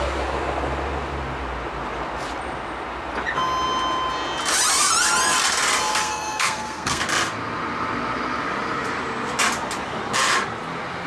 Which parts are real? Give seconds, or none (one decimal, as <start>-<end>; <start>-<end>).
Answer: 0.0-5.9; 7.0-11.1